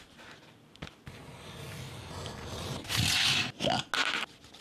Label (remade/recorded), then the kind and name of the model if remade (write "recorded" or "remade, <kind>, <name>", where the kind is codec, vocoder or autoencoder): recorded